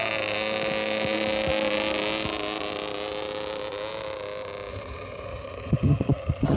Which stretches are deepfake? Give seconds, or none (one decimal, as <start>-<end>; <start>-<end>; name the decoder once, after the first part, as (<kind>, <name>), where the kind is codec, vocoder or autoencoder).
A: 4.7-6.6 (vocoder, HiFi-GAN)